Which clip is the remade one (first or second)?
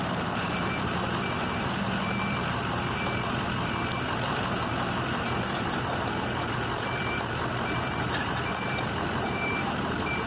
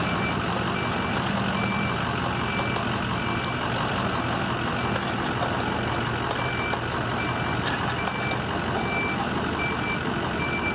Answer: first